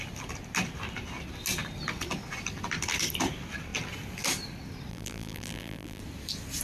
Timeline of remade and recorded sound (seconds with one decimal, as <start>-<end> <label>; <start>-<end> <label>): 0.0-4.9 recorded; 4.9-6.0 remade; 6.0-6.6 recorded